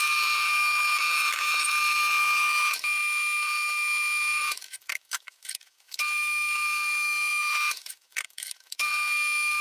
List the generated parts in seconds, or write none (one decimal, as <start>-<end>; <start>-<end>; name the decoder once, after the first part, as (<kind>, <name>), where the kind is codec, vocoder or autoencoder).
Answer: 0.0-9.6 (autoencoder, DAC-VAE)